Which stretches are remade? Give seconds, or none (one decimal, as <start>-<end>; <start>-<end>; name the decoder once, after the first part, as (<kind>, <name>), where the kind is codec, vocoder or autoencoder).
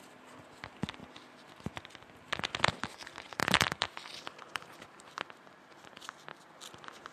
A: 3.4-4.8 (vocoder, BigVGAN v2)